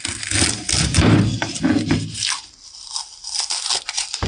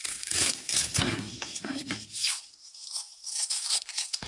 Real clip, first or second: first